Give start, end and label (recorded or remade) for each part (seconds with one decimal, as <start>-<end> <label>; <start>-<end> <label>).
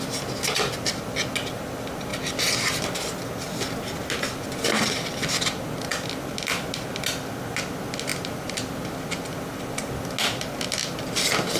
0.0-8.1 recorded; 8.1-8.6 remade; 8.6-11.6 recorded